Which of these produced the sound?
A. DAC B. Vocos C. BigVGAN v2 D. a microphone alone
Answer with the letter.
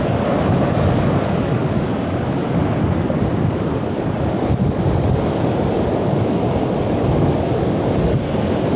A